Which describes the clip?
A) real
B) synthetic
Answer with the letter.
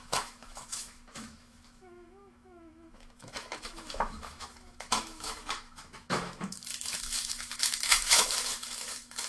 B